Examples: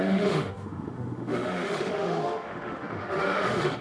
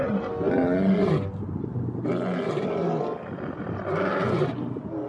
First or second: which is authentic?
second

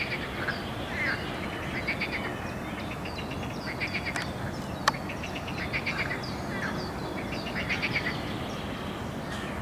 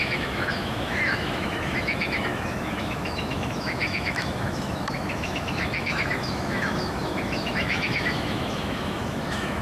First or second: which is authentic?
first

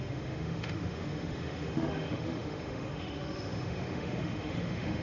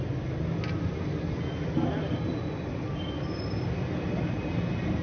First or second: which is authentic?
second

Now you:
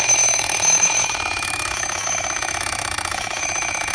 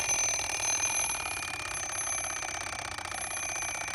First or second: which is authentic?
second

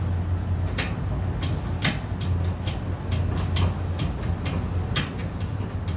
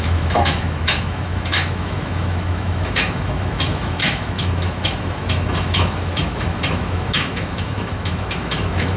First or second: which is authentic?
first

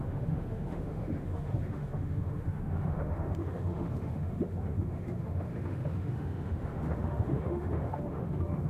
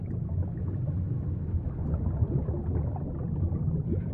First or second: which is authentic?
second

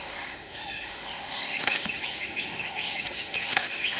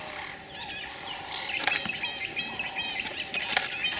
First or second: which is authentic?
second